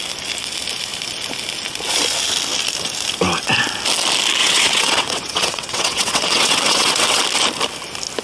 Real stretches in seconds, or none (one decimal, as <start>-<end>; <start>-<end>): 0.0-4.4; 7.2-8.2